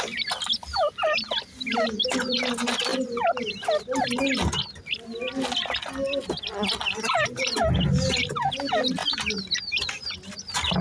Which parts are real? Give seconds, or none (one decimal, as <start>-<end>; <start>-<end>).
0.0-10.8